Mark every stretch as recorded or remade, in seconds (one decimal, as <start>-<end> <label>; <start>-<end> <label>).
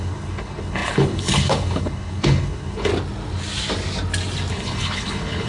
0.0-2.9 remade; 2.9-4.5 recorded; 4.5-5.5 remade